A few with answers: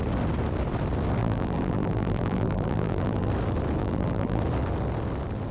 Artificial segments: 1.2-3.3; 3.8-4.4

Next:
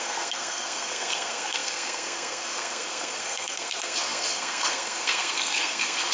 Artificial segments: 0.0-6.1